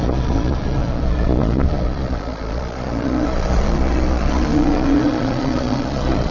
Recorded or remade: remade